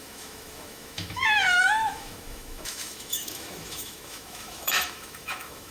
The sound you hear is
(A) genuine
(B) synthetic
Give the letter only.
B